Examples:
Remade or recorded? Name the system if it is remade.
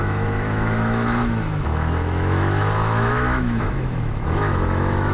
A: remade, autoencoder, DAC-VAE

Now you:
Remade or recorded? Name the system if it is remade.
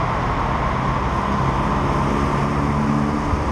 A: recorded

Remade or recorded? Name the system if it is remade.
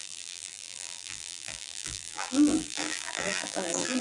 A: remade, vocoder, BigVGAN v2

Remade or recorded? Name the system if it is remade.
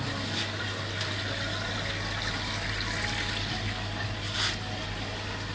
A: recorded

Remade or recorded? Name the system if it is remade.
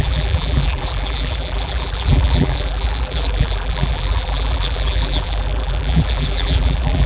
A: remade, vocoder, BigVGAN v2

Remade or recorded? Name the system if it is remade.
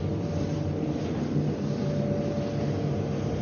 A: recorded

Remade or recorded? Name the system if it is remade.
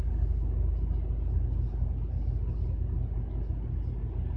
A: recorded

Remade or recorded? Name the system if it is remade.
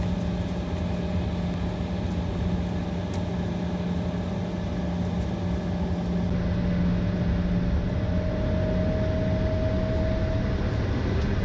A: recorded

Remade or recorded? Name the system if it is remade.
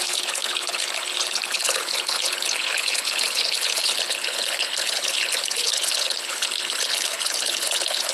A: remade, codec, HILCodec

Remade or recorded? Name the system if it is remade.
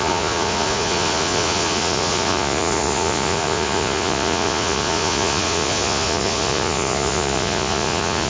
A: remade, vocoder, Vocos